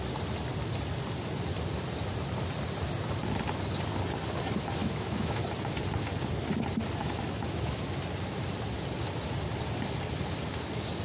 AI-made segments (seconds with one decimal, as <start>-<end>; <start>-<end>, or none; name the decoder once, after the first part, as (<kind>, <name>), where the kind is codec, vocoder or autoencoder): 4.8-5.4 (autoencoder, DAC-VAE); 7.0-7.8